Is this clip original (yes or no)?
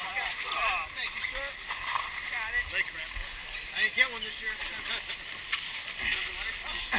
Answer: yes